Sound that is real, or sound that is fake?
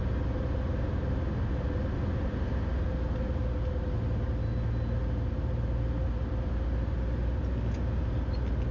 real